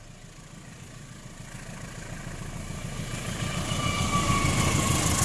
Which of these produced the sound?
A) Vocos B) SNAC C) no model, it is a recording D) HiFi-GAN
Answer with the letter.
C